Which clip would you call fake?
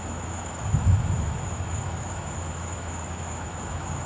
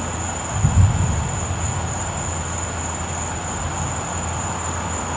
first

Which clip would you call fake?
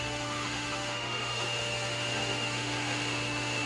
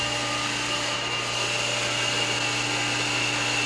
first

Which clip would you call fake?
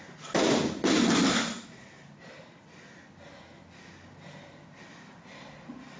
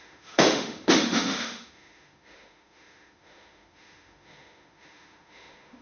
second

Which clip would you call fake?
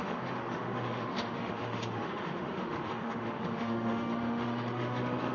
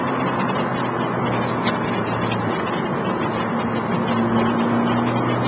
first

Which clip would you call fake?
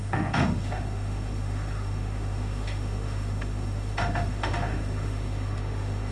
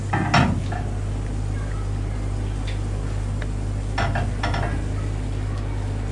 first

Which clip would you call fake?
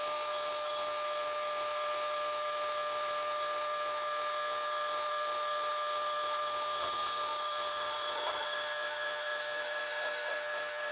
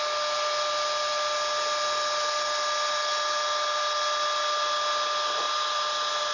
first